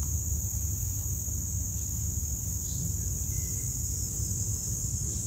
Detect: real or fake real